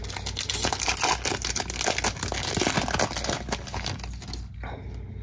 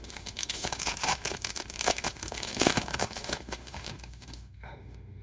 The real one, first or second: first